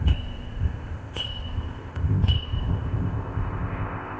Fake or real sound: fake